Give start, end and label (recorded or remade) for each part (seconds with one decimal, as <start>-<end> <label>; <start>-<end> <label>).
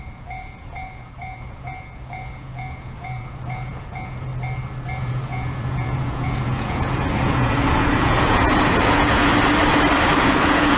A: 0.0-4.3 remade; 4.3-5.0 recorded; 5.0-9.3 remade; 9.3-10.2 recorded; 10.2-10.8 remade